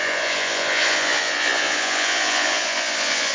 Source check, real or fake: fake